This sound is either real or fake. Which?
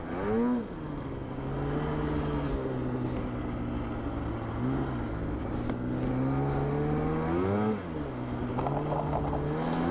real